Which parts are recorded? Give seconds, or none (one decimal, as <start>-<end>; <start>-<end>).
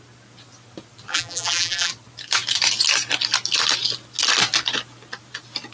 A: 0.0-1.1; 1.9-5.7